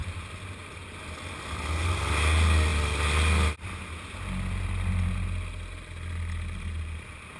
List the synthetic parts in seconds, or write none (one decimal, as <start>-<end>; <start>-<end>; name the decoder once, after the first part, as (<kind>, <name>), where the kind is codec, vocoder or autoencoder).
none